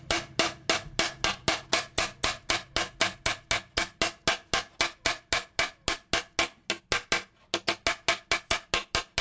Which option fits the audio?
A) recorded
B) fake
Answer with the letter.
A